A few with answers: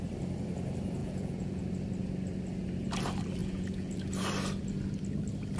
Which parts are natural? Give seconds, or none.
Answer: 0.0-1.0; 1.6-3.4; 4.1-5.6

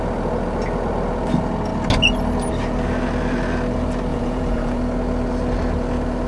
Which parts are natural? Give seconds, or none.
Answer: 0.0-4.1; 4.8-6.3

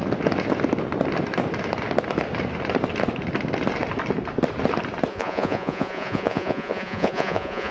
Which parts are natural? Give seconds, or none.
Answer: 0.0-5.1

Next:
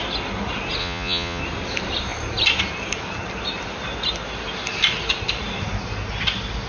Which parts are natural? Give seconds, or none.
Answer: 0.0-0.8; 1.4-6.7

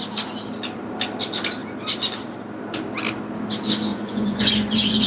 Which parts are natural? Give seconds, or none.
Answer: 0.0-3.9